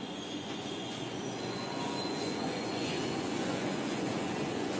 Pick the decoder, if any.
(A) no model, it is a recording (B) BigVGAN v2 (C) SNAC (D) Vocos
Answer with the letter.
D